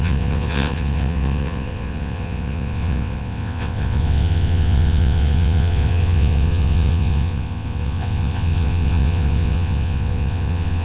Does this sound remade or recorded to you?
remade